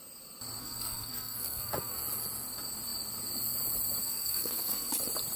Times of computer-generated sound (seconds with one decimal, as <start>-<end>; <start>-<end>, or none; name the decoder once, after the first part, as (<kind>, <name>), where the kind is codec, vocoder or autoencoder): 0.6-2.0 (codec, SNAC); 4.0-4.9

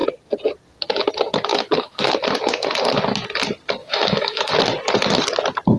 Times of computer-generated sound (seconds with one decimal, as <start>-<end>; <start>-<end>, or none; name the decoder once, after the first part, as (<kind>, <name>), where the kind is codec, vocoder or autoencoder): 1.5-2.1 (autoencoder, DAC-VAE); 3.8-4.6

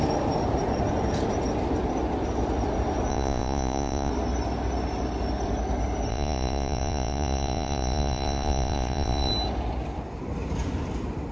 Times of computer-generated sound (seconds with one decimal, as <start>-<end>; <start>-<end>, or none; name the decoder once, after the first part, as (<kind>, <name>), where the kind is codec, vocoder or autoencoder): 3.1-4.1 (vocoder, Vocos); 6.1-9.3

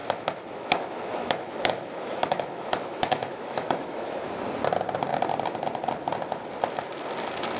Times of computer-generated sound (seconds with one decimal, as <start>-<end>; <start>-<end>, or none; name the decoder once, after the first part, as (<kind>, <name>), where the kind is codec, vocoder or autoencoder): 0.0-4.3 (autoencoder, DAC-VAE)

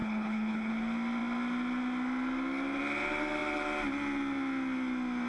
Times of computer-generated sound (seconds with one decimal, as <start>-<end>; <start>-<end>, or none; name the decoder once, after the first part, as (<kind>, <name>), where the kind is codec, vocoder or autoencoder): 0.0-0.7 (codec, HILCodec)

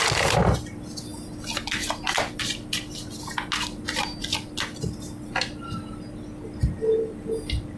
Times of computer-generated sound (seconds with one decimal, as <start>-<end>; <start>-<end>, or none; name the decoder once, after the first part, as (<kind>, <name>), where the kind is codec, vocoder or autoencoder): none